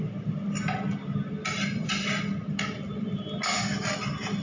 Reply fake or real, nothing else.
real